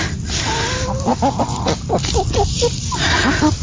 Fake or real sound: real